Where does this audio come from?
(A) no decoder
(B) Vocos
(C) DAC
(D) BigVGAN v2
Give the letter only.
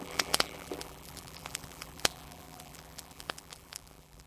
D